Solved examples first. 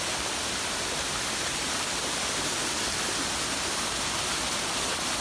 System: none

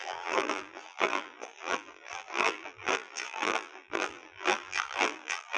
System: vocoder, BigVGAN v2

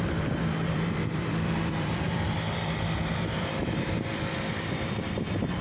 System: vocoder, BigVGAN v2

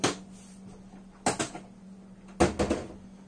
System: none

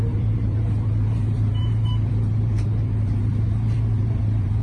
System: vocoder, BigVGAN v2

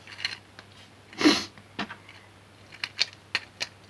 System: none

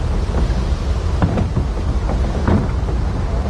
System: none